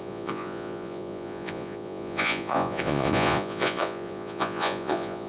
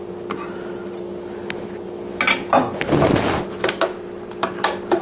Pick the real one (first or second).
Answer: second